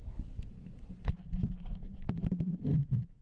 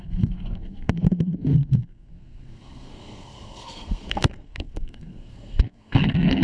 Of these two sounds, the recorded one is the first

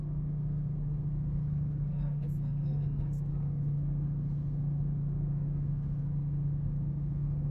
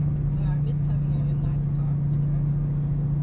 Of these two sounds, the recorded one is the second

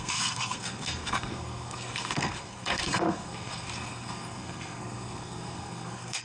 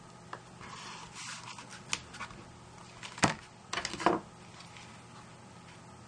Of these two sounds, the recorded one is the second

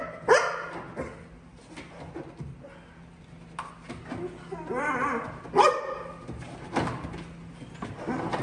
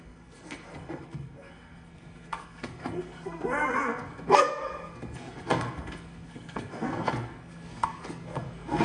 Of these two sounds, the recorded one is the first